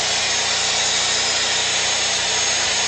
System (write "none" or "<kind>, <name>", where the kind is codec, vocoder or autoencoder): none